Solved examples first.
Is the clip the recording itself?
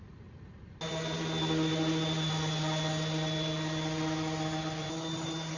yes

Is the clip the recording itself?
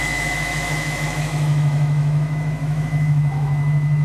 no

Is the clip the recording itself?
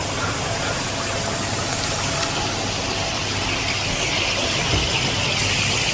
yes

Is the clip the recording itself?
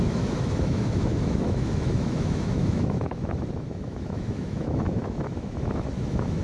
no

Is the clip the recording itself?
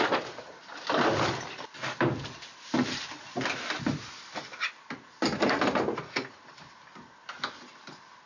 yes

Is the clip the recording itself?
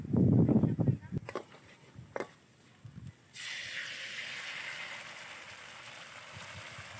yes